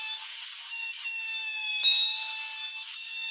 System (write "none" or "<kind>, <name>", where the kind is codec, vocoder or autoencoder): codec, DAC